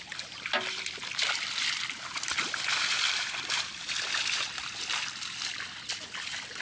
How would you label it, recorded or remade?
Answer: recorded